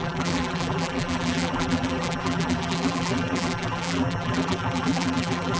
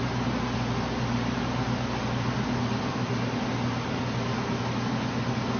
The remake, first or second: first